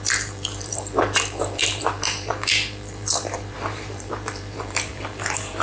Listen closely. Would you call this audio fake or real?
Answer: fake